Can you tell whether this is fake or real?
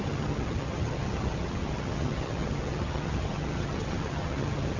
fake